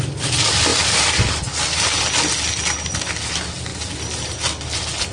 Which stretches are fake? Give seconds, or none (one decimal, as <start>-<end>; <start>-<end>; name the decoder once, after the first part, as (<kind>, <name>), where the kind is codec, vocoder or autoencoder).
0.0-0.7 (vocoder, BigVGAN v2); 2.9-5.1